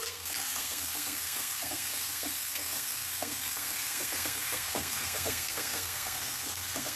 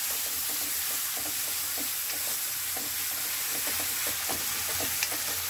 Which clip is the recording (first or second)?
second